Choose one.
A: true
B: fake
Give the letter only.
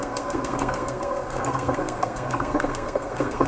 B